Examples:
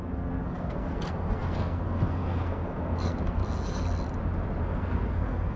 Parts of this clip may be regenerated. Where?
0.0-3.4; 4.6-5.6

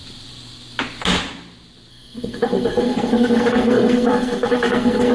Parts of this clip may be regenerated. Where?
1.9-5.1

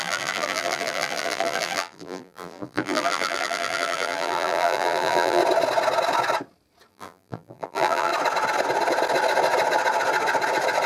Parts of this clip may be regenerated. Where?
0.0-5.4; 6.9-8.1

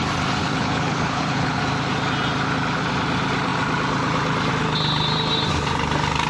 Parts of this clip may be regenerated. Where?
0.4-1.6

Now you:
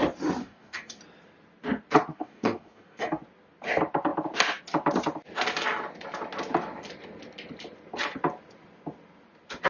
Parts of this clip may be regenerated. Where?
0.4-1.0; 2.1-3.2

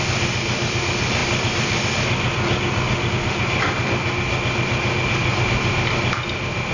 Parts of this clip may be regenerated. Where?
none

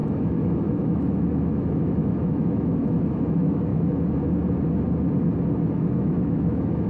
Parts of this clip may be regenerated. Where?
0.0-3.7; 5.7-6.9

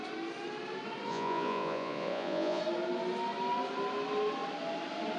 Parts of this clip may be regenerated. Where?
1.1-2.6